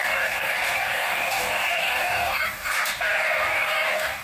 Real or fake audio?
fake